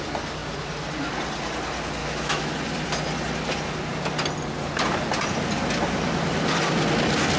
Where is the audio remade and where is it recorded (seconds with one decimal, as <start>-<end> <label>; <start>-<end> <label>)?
0.0-2.0 recorded; 2.0-2.5 remade; 2.5-7.4 recorded